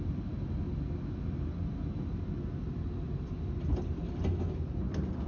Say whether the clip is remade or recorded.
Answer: recorded